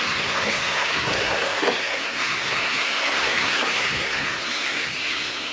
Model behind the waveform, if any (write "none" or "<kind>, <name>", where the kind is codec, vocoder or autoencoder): codec, SNAC